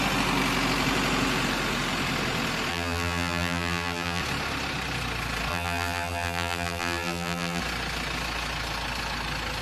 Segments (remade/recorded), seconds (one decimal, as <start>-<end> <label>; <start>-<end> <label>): 0.0-2.7 recorded; 2.7-4.2 remade; 4.2-5.5 recorded; 5.5-7.6 remade; 7.6-9.6 recorded